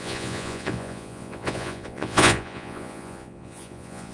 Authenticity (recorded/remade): remade